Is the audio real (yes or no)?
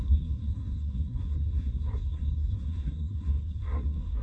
no